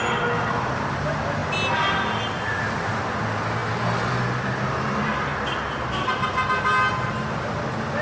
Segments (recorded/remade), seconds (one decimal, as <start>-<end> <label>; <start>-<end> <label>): 0.0-8.0 recorded